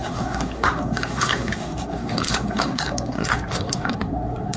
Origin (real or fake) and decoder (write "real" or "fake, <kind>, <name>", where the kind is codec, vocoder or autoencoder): fake, codec, SNAC